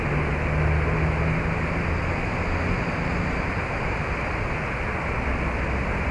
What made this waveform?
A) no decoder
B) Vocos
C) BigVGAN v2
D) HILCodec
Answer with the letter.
A